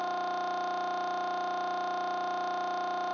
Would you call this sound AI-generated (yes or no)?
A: no